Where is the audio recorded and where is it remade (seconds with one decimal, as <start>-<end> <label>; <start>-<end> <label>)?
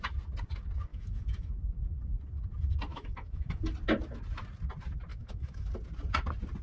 0.0-0.9 recorded; 0.9-1.5 remade; 1.5-2.9 recorded; 2.9-3.6 remade; 3.6-5.1 recorded; 5.1-5.7 remade; 5.7-6.6 recorded